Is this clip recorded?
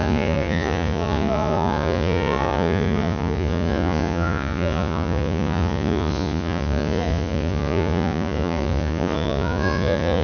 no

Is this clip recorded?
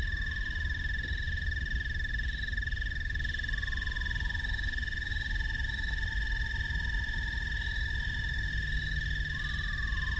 yes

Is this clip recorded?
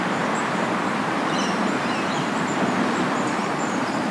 no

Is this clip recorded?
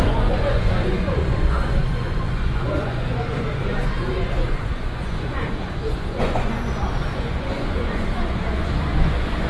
no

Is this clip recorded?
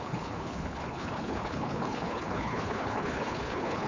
no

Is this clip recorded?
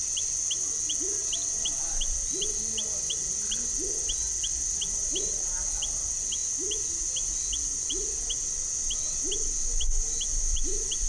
yes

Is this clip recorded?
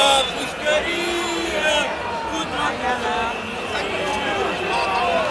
yes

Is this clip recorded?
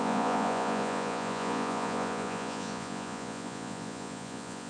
no